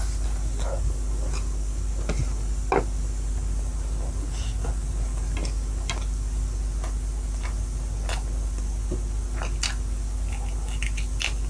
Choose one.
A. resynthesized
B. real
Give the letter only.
B